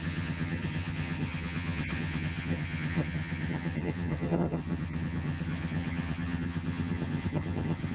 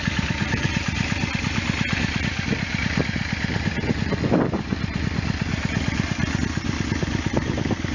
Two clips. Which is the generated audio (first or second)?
first